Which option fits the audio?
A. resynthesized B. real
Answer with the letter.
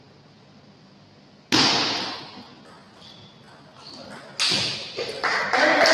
B